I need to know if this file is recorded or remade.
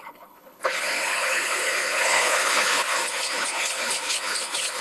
remade